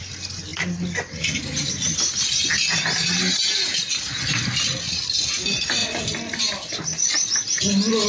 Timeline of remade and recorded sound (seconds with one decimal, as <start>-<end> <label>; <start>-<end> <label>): 0.0-8.1 recorded